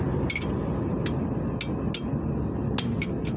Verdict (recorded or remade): recorded